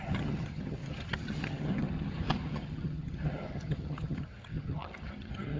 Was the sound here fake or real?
fake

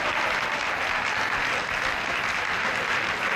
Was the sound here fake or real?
real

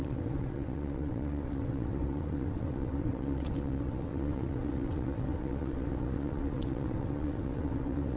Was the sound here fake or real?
fake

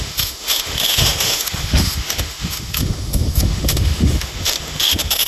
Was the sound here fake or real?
fake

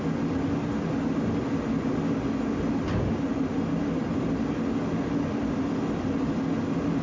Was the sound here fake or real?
real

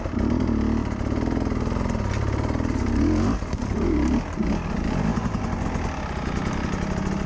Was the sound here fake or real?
real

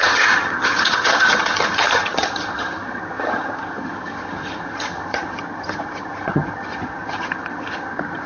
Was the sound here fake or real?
fake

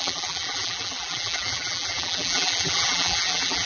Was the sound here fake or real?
fake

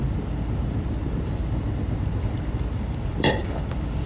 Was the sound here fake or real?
fake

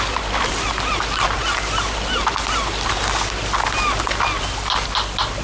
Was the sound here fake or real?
real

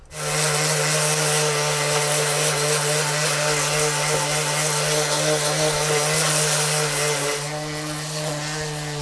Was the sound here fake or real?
real